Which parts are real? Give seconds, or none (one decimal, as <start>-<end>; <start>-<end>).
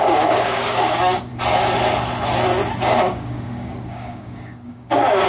1.3-3.0